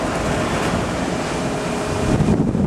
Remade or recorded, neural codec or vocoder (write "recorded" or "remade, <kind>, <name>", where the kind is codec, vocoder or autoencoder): recorded